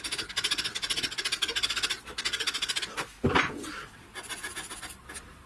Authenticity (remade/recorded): recorded